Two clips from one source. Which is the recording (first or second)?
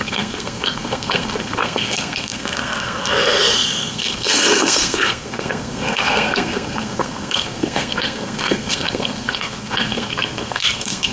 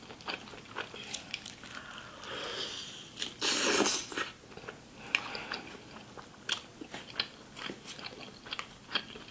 second